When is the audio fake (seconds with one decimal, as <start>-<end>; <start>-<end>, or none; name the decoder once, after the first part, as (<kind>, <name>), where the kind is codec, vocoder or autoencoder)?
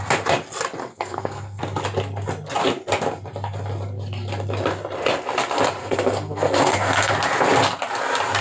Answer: 0.8-1.6 (codec, SNAC); 5.8-7.1